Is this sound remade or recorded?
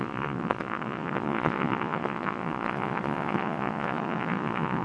remade